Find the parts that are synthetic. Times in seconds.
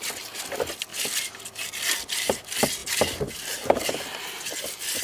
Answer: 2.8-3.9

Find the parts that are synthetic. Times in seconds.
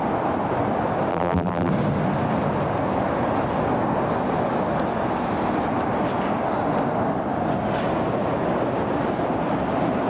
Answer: 1.1-1.7